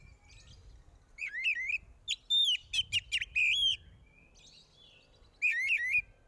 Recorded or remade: recorded